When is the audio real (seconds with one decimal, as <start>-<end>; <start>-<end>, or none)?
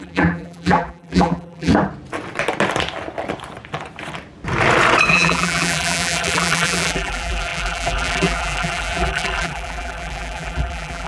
1.7-5.1